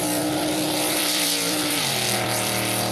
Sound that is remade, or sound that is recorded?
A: remade